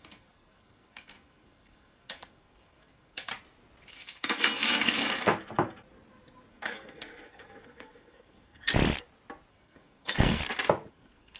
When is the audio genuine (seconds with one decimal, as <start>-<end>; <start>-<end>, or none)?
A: 3.3-3.9; 5.0-6.5; 8.7-9.5; 10.4-10.9

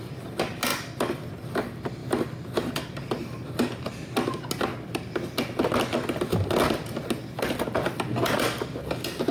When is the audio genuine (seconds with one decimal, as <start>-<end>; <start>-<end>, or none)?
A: 0.0-2.0; 3.2-9.3

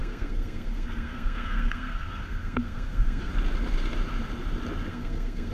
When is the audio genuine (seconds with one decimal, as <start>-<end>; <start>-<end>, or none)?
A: 3.3-4.9

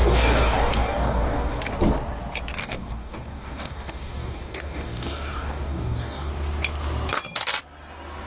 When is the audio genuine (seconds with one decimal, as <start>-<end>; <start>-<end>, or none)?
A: 1.6-2.6; 6.3-8.3

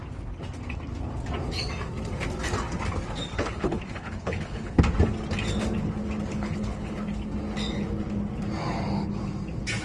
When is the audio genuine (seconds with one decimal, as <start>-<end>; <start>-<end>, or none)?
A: 0.0-3.3; 4.8-6.3; 6.9-9.8

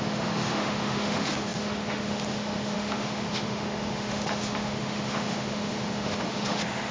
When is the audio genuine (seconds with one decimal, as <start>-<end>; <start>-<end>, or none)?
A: none